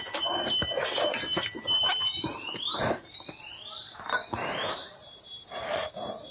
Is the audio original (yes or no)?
no